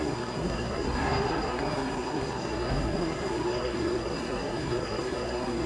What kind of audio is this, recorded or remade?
remade